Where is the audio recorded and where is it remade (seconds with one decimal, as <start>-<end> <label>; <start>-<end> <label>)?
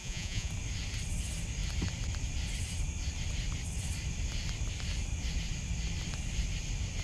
0.0-0.5 remade; 0.5-7.0 recorded